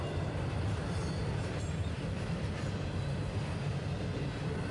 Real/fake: real